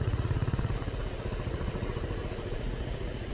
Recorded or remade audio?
remade